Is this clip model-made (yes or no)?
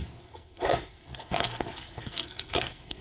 yes